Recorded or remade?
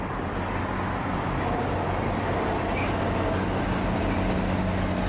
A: recorded